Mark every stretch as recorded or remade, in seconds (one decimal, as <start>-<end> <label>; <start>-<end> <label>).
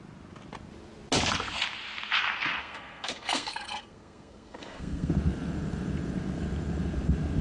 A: 0.0-2.6 recorded; 2.6-5.1 remade; 5.1-7.4 recorded